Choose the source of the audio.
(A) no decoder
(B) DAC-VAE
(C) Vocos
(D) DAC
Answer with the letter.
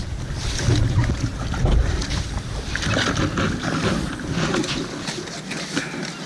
A